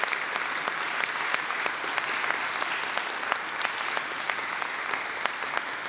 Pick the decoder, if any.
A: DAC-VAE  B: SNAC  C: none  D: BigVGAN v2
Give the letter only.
C